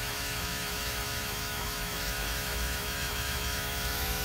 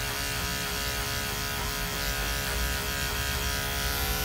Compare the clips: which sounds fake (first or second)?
first